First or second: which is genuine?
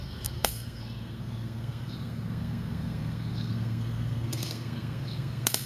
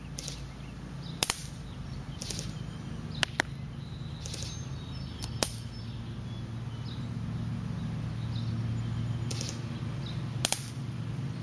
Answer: second